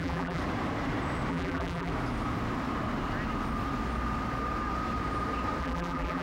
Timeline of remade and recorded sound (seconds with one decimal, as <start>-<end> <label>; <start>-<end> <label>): 0.0-0.4 remade; 0.4-1.3 recorded; 1.3-1.9 remade; 1.9-5.6 recorded; 5.6-6.2 remade